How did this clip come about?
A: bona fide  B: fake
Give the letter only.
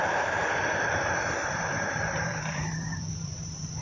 B